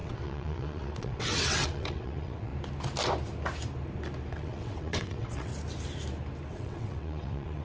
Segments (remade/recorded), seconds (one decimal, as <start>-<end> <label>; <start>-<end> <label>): 0.0-2.5 remade; 2.5-4.3 recorded; 4.3-5.5 remade; 5.5-6.5 recorded; 6.5-7.6 remade